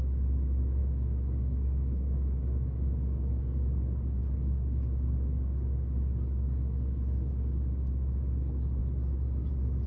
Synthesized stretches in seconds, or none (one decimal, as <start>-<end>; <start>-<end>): 0.0-8.8; 9.5-9.9